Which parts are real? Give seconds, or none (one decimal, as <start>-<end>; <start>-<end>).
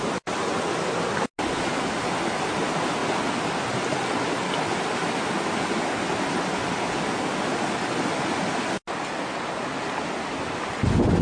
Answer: 0.0-11.2